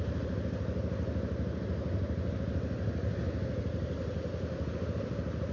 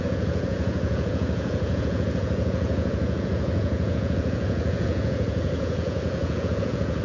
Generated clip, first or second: second